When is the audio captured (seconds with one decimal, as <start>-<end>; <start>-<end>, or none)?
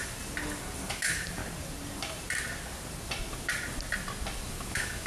0.0-0.9; 1.4-4.5